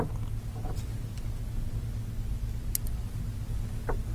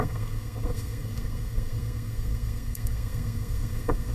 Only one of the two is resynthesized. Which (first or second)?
second